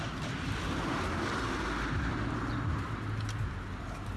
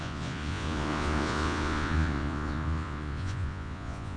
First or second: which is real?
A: first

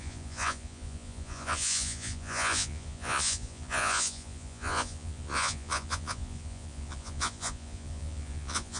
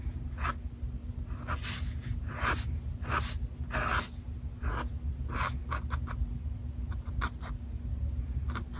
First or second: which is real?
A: second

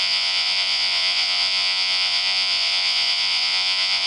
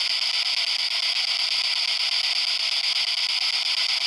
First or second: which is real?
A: second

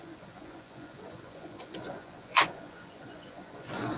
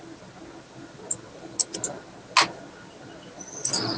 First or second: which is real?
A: second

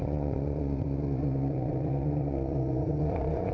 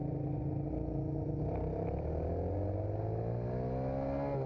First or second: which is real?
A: second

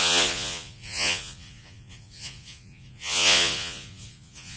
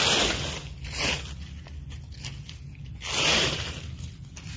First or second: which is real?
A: second